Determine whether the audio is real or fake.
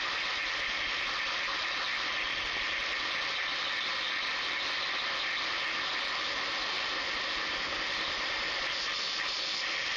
real